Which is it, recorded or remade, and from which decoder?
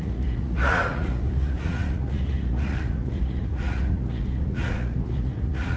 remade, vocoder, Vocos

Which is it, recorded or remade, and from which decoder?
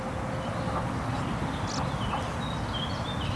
recorded